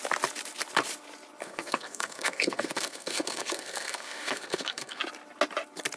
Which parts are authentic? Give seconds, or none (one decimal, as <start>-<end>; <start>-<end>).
0.0-1.4; 5.0-6.0